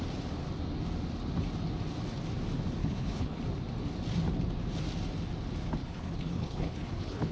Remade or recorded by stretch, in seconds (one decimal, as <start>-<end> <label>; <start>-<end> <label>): 0.0-2.8 recorded; 2.8-3.4 remade; 3.4-5.8 recorded; 5.8-7.3 remade